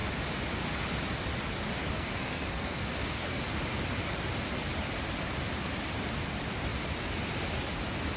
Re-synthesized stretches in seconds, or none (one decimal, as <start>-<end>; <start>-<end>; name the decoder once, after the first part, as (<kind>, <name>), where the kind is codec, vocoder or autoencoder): 1.8-3.4 (codec, SNAC)